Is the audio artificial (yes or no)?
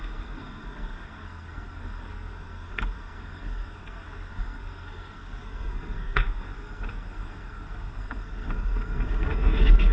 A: yes